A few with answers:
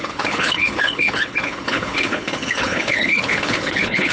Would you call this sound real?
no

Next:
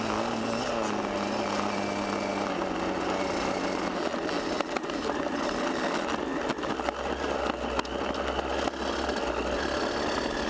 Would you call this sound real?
yes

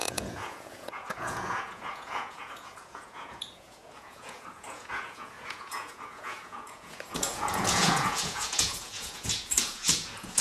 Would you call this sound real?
no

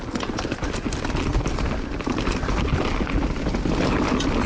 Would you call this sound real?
yes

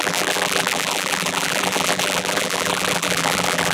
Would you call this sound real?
no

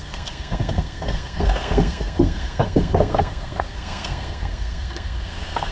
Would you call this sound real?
no